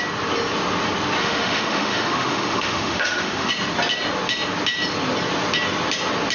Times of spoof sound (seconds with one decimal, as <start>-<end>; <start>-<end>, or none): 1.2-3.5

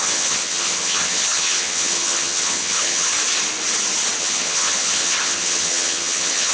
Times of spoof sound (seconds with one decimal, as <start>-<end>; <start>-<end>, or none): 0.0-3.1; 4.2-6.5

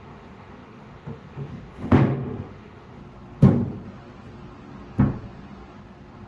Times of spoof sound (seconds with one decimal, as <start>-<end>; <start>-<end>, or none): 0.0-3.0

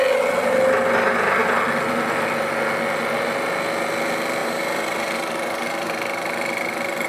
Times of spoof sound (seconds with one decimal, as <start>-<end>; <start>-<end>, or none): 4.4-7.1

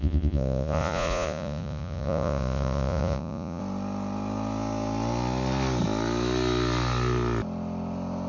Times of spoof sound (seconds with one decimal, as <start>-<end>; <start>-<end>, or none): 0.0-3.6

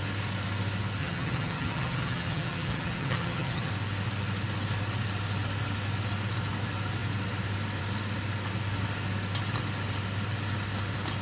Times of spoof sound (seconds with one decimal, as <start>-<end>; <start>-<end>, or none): 1.0-3.7

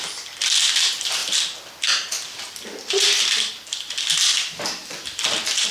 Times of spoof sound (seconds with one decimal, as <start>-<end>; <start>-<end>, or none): none